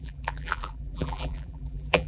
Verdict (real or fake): fake